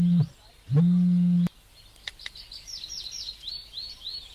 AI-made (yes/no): no